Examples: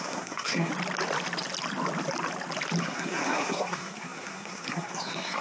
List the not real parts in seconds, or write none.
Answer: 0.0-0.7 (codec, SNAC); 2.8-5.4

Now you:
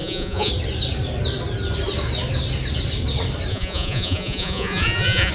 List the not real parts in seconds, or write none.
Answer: 0.0-0.5 (vocoder, Vocos); 3.5-5.3

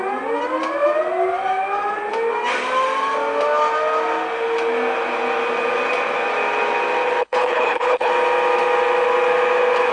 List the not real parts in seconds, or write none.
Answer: 7.2-8.1 (codec, HILCodec)

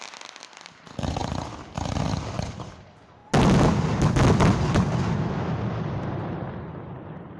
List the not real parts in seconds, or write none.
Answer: none

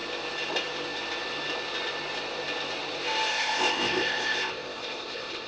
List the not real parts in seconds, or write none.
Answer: 3.3-5.5 (codec, ZipCodec)

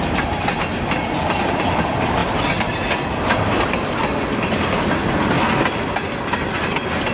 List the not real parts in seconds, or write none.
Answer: none